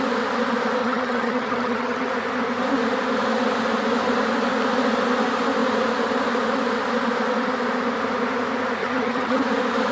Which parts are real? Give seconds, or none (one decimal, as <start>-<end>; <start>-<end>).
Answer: 0.0-0.8; 2.1-8.8; 9.4-9.9